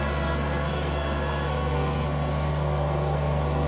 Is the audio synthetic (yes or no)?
yes